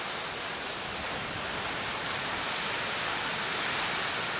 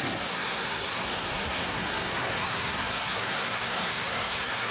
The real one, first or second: first